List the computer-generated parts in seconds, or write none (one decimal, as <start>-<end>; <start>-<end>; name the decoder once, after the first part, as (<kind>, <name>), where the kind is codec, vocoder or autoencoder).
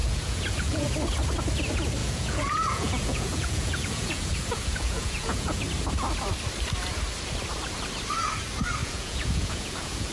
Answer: 0.0-0.9 (vocoder, Vocos); 2.0-5.6; 8.8-10.1